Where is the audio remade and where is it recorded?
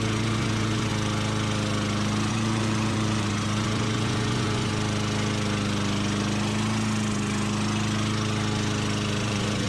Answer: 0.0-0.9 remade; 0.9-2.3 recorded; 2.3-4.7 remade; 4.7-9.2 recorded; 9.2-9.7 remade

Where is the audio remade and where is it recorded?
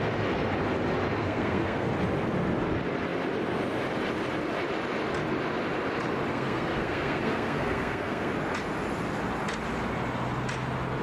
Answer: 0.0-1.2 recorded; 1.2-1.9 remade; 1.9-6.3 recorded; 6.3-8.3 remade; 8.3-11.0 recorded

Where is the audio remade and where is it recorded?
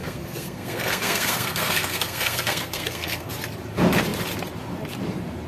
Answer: 0.0-3.3 remade; 3.3-5.5 recorded